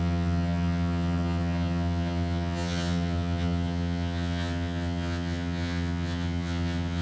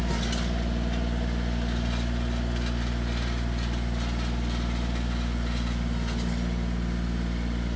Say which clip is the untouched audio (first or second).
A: second